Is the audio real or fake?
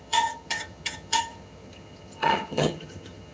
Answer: fake